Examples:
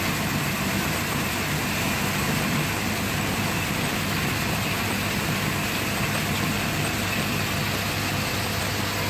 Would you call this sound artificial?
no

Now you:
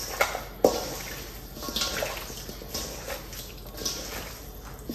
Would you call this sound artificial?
no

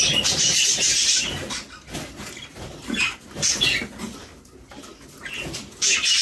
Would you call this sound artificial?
no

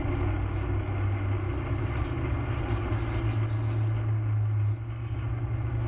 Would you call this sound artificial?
no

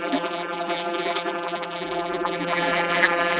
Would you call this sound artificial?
yes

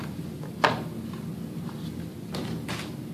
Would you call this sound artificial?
no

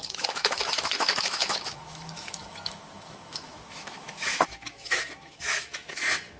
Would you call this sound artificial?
yes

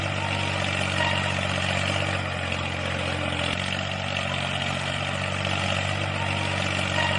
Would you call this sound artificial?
no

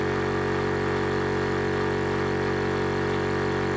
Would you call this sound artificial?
no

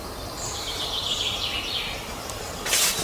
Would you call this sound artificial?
yes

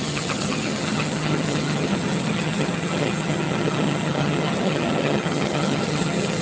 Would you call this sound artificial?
yes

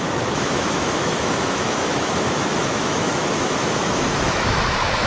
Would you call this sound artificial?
yes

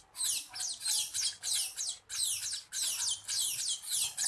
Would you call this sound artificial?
no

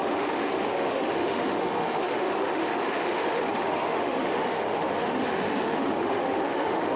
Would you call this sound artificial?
yes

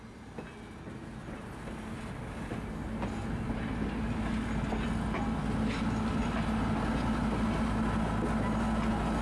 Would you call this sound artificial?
no